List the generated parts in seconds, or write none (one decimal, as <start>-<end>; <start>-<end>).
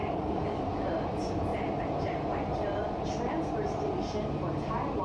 0.0-0.6